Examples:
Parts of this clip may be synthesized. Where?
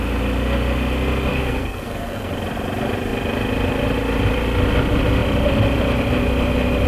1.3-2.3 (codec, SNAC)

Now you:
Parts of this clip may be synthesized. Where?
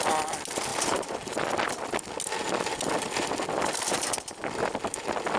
none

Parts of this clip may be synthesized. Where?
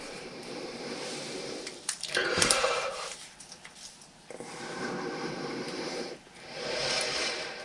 0.0-7.6 (vocoder, BigVGAN v2)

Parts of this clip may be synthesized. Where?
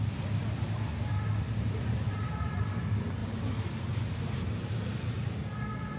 none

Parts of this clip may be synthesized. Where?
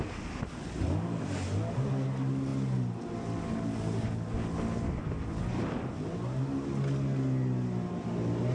none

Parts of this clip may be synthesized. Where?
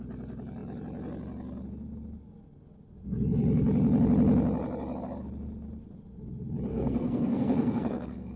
6.7-8.4 (codec, SNAC)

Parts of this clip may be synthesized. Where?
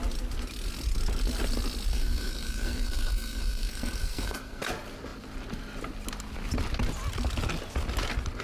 1.9-4.6 (codec, SNAC)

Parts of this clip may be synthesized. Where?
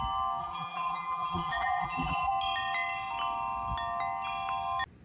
0.4-2.3 (vocoder, BigVGAN v2)